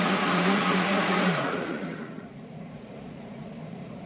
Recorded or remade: remade